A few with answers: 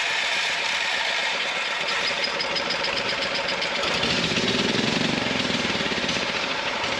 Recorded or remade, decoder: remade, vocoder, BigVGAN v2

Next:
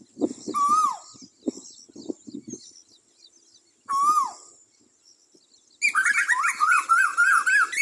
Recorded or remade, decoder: recorded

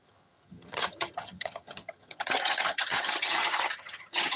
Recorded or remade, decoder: remade, vocoder, HiFi-GAN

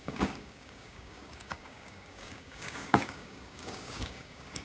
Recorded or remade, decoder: remade, codec, DAC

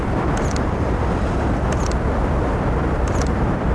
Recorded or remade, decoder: remade, vocoder, BigVGAN v2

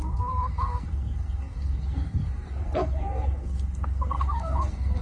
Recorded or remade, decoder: remade, codec, SNAC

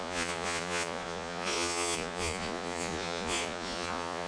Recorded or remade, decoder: remade, vocoder, Vocos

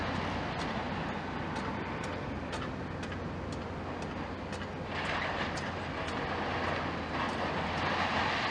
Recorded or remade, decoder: recorded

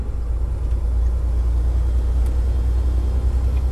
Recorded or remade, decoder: recorded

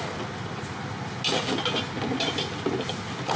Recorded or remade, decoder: recorded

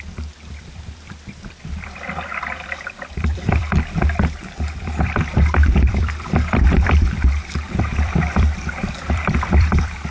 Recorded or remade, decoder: remade, vocoder, BigVGAN v2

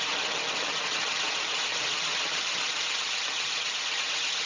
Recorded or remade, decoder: recorded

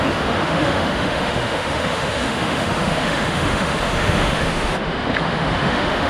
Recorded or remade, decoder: remade, autoencoder, DAC-VAE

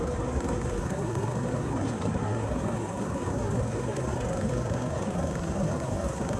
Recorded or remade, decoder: remade, codec, SNAC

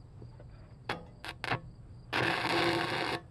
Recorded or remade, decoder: recorded